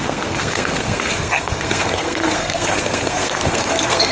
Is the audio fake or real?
fake